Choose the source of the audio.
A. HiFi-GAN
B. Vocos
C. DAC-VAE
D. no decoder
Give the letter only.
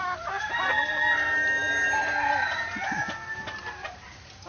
D